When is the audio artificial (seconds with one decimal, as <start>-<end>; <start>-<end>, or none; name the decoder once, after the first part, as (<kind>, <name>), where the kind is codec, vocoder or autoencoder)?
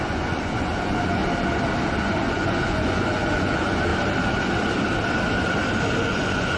0.0-1.2 (vocoder, Vocos); 2.0-3.9; 6.0-6.6